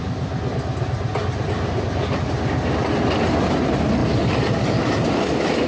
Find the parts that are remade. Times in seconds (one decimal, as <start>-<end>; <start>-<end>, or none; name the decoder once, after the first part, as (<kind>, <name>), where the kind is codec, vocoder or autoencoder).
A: none

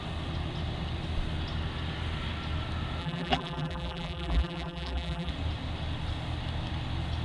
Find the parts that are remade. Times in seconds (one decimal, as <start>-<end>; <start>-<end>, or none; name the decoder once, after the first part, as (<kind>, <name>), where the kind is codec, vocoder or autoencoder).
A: 3.0-5.3 (vocoder, BigVGAN v2)

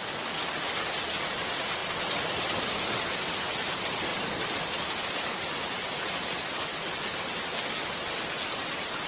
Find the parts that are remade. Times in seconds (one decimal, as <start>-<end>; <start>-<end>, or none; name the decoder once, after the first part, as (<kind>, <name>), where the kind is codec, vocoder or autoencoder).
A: 1.8-2.8 (vocoder, BigVGAN v2); 4.1-6.7

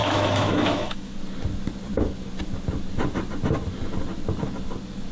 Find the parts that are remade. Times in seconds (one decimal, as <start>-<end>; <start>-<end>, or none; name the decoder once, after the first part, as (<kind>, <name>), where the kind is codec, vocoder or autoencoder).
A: 0.0-1.1 (autoencoder, DAC-VAE)

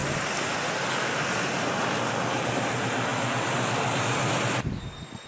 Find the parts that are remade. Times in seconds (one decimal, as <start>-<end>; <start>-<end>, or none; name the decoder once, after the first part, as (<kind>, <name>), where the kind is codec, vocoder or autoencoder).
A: none

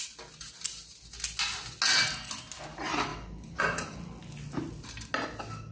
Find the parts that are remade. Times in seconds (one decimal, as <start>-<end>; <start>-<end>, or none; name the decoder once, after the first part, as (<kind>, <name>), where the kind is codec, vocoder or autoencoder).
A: 3.1-3.6 (vocoder, BigVGAN v2)

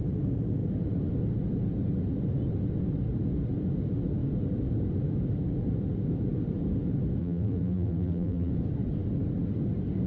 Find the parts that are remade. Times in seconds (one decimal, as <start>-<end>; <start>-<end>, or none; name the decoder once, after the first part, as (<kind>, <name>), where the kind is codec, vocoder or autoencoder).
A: 7.2-8.5 (vocoder, BigVGAN v2)

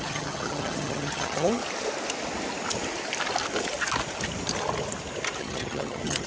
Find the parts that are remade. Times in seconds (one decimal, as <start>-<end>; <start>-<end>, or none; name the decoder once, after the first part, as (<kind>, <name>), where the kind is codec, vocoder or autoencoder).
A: 0.0-1.6 (vocoder, HiFi-GAN); 5.4-6.3